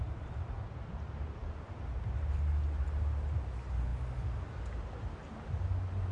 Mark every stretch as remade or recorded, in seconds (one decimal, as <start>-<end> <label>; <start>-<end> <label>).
0.0-6.1 recorded